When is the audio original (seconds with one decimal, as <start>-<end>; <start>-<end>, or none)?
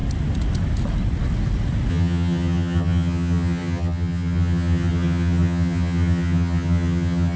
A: 0.0-1.9